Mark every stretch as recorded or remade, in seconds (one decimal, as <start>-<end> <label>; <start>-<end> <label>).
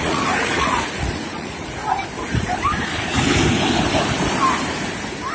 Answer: 0.0-1.8 remade; 1.8-5.3 recorded